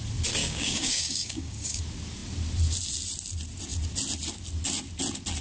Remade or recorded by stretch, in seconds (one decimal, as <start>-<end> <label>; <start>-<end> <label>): 0.0-0.4 recorded; 0.4-1.8 remade; 1.8-5.4 recorded